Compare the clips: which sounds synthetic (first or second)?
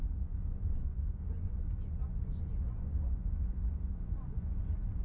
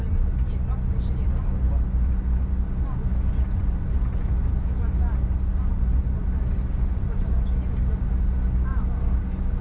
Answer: first